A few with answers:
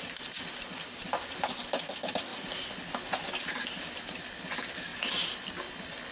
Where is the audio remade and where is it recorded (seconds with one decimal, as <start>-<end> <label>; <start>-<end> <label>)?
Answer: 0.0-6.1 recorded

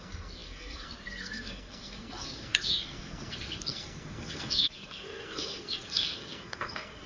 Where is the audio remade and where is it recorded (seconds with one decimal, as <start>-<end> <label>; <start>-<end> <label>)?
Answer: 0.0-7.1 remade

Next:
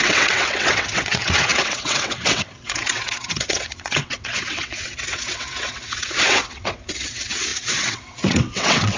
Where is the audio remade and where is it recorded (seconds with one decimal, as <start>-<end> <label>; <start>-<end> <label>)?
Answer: 0.0-9.0 remade

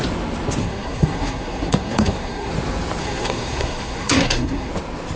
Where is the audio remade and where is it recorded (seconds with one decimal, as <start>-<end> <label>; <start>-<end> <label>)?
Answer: 0.0-0.6 recorded; 0.6-2.5 remade; 2.5-3.0 recorded; 3.0-4.7 remade; 4.7-5.2 recorded

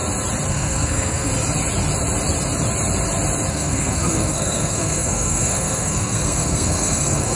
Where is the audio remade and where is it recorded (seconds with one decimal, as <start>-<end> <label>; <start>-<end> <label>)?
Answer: 0.0-0.5 recorded; 0.5-1.3 remade; 1.3-3.5 recorded; 3.5-7.4 remade

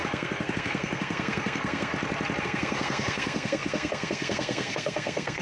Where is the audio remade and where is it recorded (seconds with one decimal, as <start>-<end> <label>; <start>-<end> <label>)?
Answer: 0.0-1.9 remade; 1.9-2.4 recorded; 2.4-5.4 remade

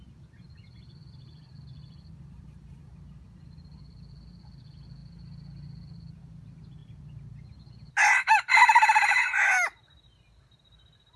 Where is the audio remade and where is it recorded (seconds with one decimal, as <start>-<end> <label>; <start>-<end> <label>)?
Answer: 0.0-11.2 recorded